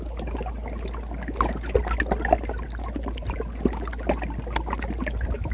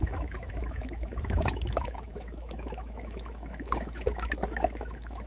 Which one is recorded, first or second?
first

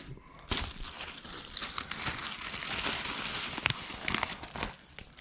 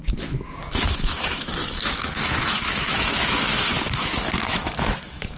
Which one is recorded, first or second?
first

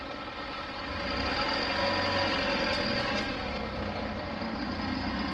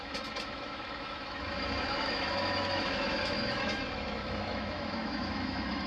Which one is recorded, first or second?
first